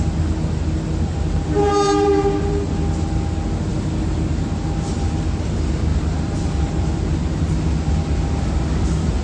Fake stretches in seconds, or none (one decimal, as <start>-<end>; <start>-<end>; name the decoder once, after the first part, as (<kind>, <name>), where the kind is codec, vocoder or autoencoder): 5.9-7.3 (vocoder, BigVGAN v2)